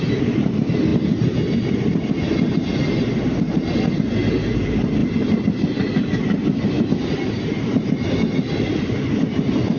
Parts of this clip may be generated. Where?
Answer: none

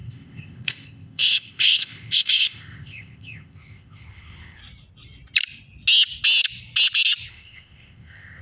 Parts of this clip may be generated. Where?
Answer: 0.0-4.6 (codec, ZipCodec); 7.3-8.4